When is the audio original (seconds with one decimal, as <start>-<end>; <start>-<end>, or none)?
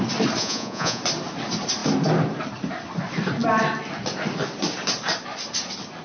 0.0-0.4; 1.0-6.0